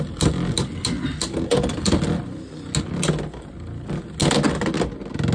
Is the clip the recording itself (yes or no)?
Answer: yes